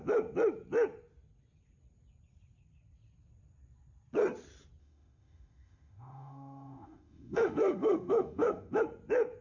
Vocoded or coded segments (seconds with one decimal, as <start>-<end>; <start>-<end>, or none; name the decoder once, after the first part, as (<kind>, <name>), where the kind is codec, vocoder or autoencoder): 4.8-8.8 (autoencoder, DAC-VAE)